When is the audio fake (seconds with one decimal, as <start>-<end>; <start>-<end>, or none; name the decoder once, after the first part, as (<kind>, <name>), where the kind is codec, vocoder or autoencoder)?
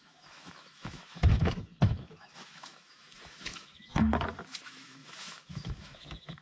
0.0-6.4 (autoencoder, DAC-VAE)